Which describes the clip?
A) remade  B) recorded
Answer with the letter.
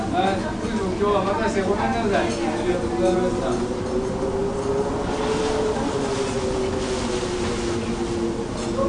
B